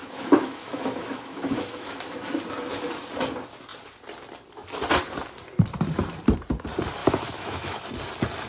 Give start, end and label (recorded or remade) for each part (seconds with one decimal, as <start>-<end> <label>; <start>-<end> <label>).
0.0-2.4 remade; 2.4-7.0 recorded; 7.0-7.8 remade; 7.8-8.5 recorded